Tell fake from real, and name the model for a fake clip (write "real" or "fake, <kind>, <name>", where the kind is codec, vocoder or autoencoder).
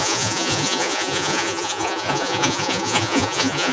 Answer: fake, vocoder, Vocos